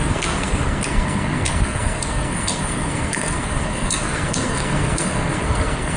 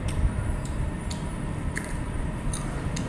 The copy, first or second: first